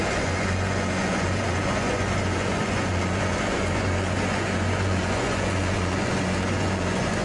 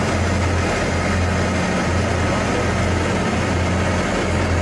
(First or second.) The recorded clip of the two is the second